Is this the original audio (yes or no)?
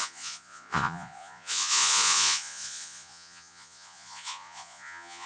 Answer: no